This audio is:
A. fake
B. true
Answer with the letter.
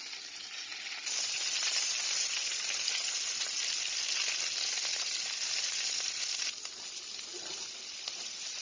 B